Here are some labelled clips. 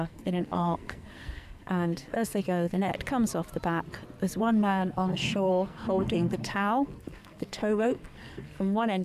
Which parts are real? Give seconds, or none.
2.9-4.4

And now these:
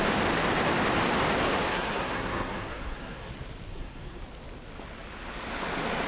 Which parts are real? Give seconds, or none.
0.0-1.7; 3.3-3.7; 4.2-6.1

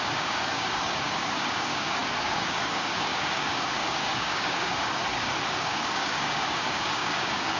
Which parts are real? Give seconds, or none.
5.0-5.6

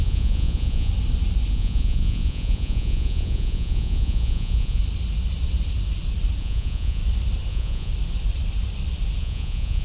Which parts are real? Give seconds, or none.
0.9-1.5; 4.8-6.4; 7.0-7.5; 7.9-9.2

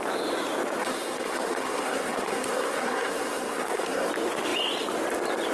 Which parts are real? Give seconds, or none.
0.0-0.8; 4.1-5.5

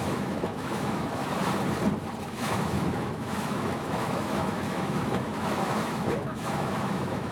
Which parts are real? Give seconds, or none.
1.2-2.2

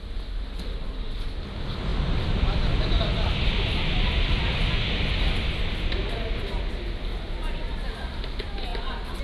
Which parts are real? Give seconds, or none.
0.0-9.2